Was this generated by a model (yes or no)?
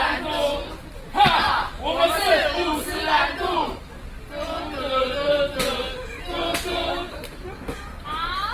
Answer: no